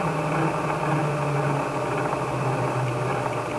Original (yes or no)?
yes